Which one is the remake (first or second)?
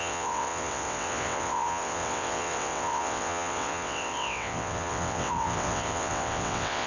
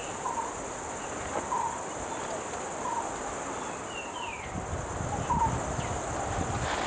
first